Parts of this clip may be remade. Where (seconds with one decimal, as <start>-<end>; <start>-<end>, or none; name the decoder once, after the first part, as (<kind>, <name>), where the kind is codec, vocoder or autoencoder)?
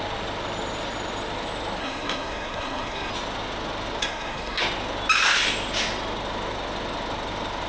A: 1.8-3.1 (codec, SNAC); 4.0-4.6